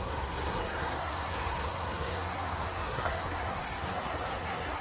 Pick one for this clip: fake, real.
fake